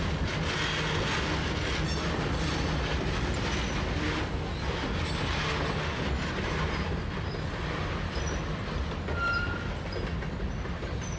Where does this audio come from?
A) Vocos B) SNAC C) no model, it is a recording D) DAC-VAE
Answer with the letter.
C